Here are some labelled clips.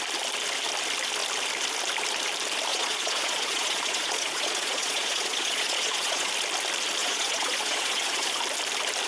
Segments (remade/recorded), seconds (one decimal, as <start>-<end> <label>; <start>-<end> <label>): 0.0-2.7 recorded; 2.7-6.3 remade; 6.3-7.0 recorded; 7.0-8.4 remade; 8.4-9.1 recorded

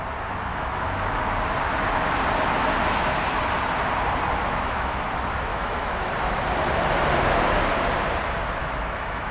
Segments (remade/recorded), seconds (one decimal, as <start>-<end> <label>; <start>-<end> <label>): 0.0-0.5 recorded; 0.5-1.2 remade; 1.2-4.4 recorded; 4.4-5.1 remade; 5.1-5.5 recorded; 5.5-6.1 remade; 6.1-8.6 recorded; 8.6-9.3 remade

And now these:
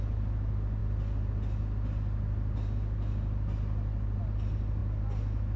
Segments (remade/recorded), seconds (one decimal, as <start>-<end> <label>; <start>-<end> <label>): 0.0-5.6 recorded

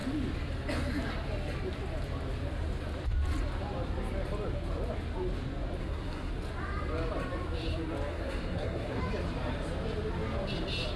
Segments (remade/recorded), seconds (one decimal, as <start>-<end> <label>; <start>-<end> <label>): 0.0-5.8 recorded; 5.8-6.3 remade; 6.3-8.1 recorded; 8.1-9.0 remade; 9.0-11.0 recorded

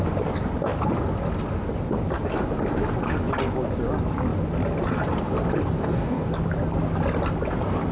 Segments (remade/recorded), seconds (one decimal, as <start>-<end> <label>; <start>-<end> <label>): 0.0-5.8 recorded; 5.8-6.3 remade; 6.3-7.9 recorded

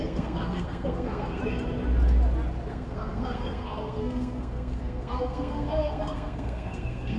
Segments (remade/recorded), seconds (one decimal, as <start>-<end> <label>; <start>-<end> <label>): 0.0-1.4 remade; 1.4-2.7 recorded; 2.7-7.2 remade

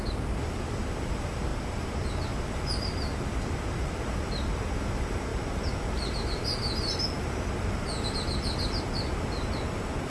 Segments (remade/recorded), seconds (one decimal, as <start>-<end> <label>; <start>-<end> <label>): 0.0-10.1 recorded

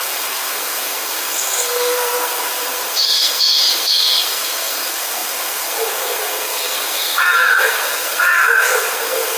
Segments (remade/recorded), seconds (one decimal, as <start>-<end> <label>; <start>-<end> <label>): 0.0-9.4 remade